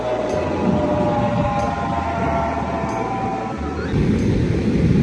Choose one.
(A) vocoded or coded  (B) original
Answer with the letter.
B